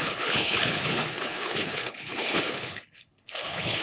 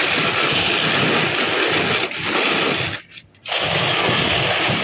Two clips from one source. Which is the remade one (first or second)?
first